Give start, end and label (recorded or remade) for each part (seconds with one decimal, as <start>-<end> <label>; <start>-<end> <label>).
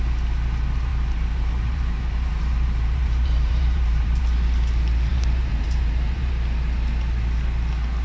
0.0-0.9 recorded; 0.9-4.2 remade; 4.2-5.1 recorded; 5.1-6.3 remade; 6.3-8.0 recorded